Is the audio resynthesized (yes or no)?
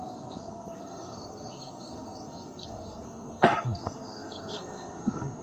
yes